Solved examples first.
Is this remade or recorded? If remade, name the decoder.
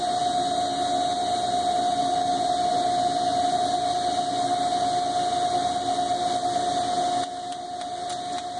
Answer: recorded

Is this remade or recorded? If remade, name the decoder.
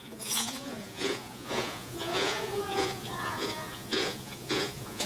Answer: remade, vocoder, Vocos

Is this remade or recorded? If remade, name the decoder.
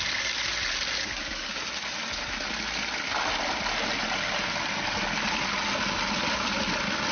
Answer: recorded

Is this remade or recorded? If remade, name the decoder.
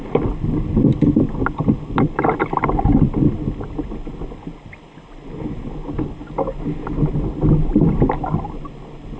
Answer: recorded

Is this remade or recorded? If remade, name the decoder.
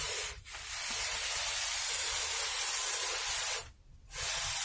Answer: remade, vocoder, BigVGAN v2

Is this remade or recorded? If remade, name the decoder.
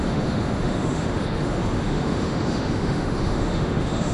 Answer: remade, autoencoder, DAC-VAE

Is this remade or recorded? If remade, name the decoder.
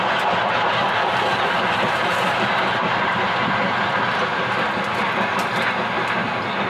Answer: recorded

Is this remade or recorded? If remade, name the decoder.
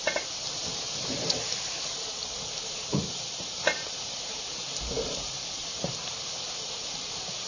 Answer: recorded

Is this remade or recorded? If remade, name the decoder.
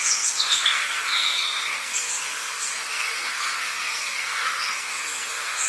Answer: remade, codec, SNAC